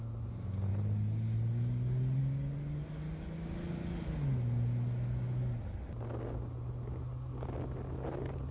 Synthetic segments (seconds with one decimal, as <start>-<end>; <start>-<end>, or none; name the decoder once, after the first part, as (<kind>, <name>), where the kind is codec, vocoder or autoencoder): none